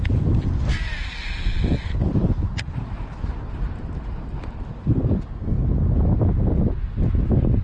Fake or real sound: real